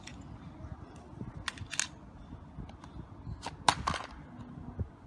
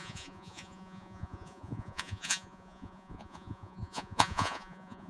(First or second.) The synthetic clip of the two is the second